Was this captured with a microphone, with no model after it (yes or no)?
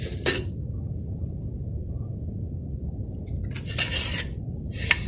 yes